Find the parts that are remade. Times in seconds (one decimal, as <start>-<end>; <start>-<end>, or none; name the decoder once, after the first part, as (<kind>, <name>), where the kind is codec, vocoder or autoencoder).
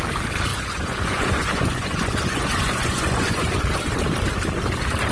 0.5-3.6 (vocoder, Vocos)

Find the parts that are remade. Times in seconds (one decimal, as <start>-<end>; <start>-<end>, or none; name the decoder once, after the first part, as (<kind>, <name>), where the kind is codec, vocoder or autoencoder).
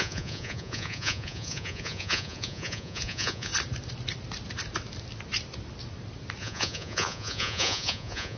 0.0-3.5 (vocoder, Vocos); 6.4-8.4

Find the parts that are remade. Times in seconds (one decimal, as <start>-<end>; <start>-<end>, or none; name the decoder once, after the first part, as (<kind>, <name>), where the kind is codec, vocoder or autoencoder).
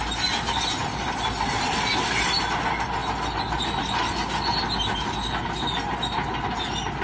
none